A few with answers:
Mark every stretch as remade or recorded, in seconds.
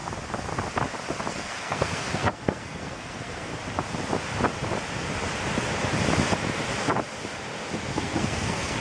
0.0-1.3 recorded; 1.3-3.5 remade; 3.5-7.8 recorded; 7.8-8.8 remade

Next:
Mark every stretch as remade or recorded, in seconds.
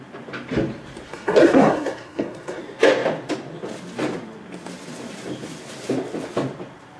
0.0-1.1 recorded; 1.1-2.6 remade; 2.6-7.0 recorded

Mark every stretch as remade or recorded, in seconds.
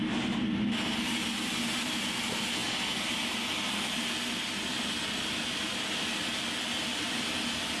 0.0-7.8 recorded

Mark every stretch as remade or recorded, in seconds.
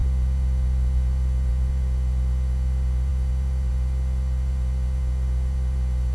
0.0-6.1 recorded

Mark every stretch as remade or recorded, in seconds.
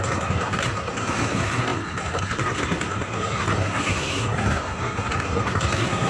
0.0-6.1 remade